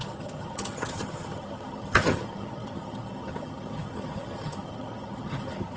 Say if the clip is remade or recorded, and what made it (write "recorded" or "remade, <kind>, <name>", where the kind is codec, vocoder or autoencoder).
remade, vocoder, HiFi-GAN